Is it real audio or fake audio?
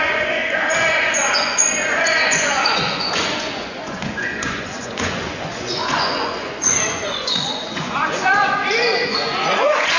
fake